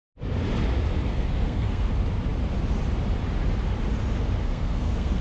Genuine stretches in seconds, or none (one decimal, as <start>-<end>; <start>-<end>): 0.0-1.1; 1.9-4.4